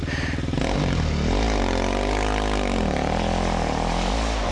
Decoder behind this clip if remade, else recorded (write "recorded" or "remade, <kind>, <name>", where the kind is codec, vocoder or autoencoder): recorded